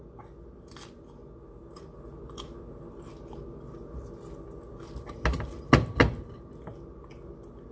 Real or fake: real